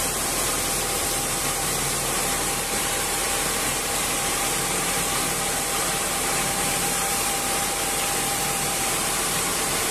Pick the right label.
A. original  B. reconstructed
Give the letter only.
B